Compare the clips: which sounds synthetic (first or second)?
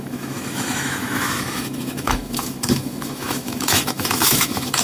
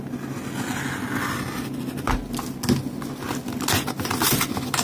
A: first